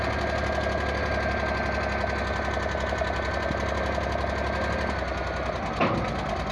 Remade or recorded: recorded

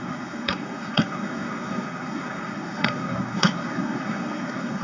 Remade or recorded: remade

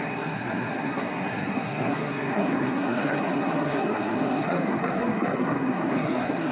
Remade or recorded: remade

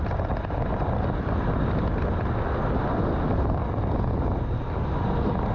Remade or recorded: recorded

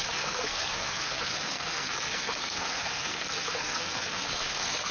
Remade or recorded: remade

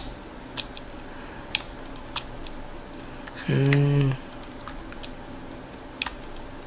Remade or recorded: recorded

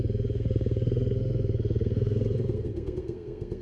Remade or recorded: remade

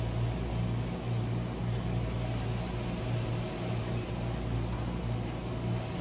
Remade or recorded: recorded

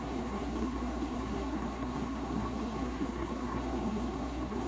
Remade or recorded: remade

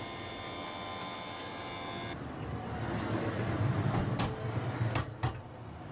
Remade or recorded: recorded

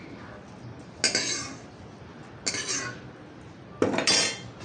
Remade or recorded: recorded